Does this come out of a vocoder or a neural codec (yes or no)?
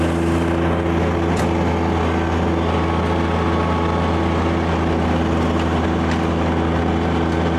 no